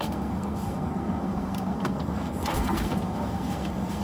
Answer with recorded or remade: remade